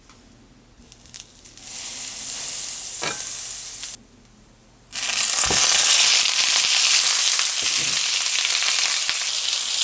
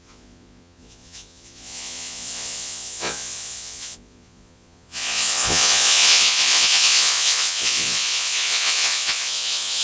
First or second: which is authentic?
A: first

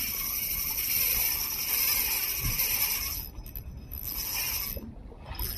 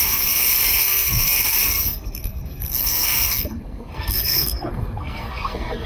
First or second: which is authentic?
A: first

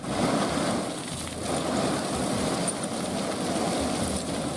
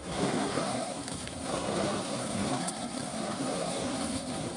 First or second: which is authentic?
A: first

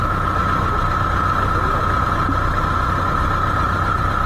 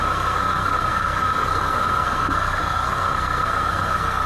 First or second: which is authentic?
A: first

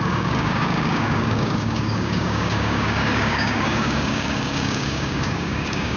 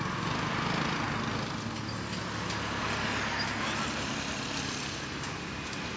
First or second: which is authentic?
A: second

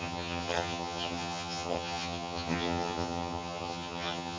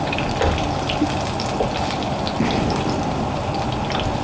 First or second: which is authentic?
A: second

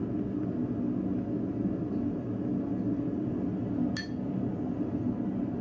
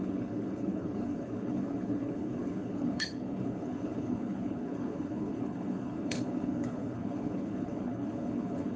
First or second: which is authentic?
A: first